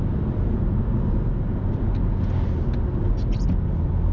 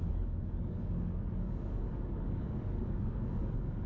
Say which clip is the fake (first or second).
second